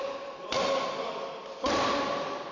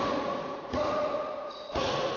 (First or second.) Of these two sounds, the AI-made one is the second